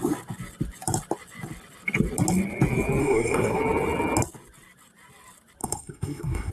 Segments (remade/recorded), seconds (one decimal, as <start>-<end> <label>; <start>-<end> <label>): 0.0-3.0 recorded; 3.0-3.6 remade; 3.6-5.6 recorded; 5.6-6.5 remade